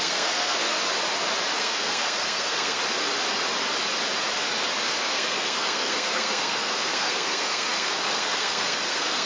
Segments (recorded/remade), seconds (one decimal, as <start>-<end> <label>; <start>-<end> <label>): 0.0-0.8 remade; 0.8-1.6 recorded; 1.6-2.8 remade; 2.8-5.0 recorded; 5.0-9.3 remade